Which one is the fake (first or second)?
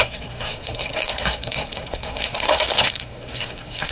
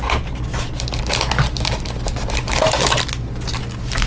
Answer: first